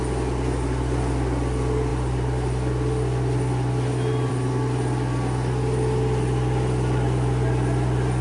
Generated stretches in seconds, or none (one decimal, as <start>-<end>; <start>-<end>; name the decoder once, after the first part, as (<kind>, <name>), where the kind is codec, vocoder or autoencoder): none